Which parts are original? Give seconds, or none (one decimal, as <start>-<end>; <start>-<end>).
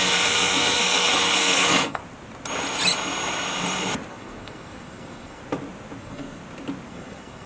2.0-4.1; 5.4-6.0; 6.4-6.9